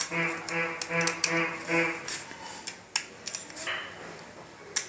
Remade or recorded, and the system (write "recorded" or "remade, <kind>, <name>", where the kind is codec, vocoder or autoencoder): recorded